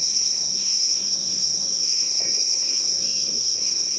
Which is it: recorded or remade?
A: remade